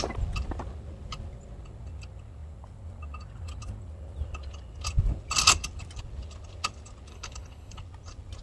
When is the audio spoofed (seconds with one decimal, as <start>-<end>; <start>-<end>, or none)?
7.1-7.8